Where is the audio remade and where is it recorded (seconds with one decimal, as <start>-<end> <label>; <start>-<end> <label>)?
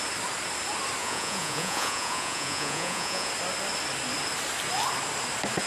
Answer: 0.0-1.0 recorded; 1.0-3.3 remade; 3.3-5.7 recorded